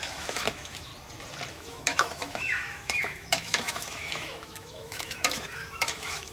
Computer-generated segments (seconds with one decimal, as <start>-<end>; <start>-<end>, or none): 0.0-0.9; 1.5-6.3